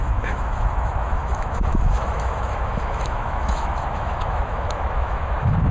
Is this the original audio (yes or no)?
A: no